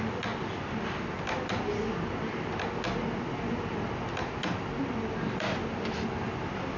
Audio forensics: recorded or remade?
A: recorded